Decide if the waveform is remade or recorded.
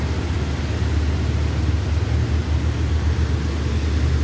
recorded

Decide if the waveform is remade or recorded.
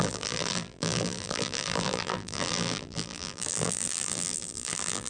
remade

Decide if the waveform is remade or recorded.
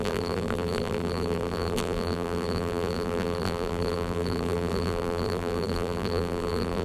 remade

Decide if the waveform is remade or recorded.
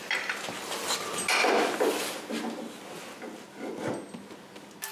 recorded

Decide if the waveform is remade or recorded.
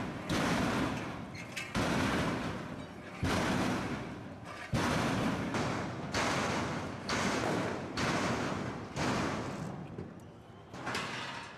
recorded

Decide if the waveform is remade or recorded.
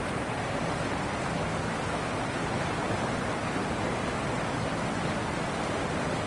recorded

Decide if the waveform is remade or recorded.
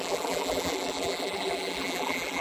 remade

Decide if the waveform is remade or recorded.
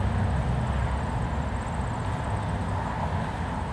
recorded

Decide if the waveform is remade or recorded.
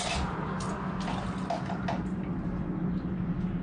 recorded